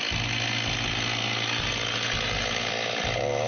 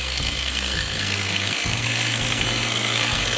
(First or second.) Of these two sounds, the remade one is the second